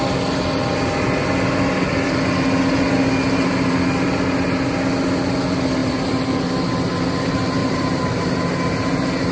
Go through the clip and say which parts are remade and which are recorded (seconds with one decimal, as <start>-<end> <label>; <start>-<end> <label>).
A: 0.0-5.8 recorded; 5.8-6.4 remade; 6.4-7.6 recorded; 7.6-8.2 remade; 8.2-9.3 recorded